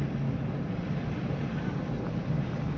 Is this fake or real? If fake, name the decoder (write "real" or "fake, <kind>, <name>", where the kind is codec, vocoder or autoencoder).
real